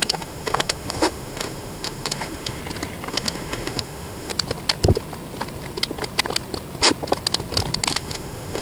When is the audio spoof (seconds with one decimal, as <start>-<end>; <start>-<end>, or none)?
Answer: 0.0-2.6; 3.1-4.3; 7.9-8.6